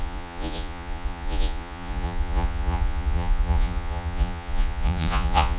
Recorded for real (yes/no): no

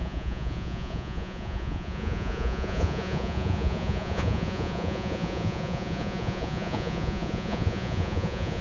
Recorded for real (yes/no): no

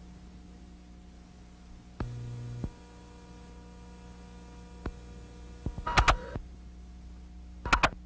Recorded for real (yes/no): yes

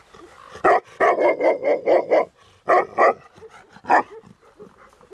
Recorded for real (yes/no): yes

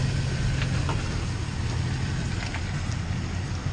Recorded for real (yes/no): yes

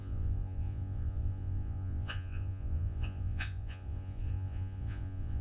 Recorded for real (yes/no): no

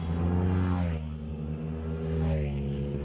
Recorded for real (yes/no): yes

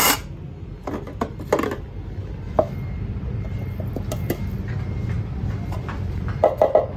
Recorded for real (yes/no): yes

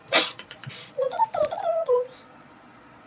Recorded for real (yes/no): no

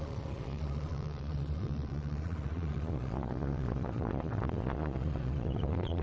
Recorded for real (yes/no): no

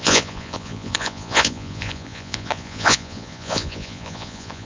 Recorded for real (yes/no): no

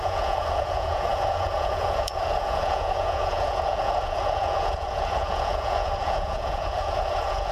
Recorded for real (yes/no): no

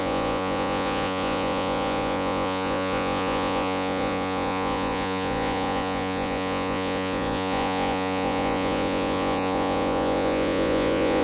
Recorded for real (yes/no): no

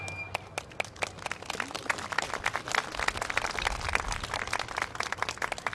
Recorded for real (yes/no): yes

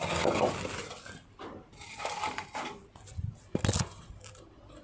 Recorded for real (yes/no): yes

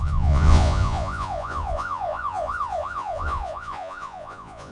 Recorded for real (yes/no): no